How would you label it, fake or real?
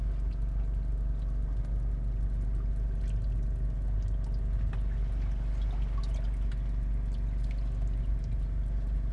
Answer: real